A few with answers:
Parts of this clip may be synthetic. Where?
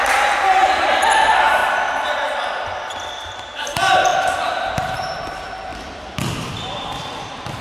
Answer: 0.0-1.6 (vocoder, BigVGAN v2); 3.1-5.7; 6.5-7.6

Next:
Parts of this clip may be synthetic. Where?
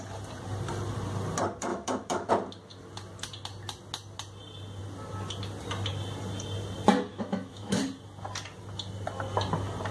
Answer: 1.7-2.3 (autoencoder, DAC-VAE); 7.1-7.8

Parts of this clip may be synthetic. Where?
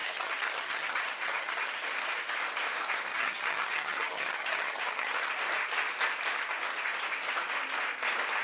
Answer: 0.0-1.7 (vocoder, HiFi-GAN); 3.1-5.3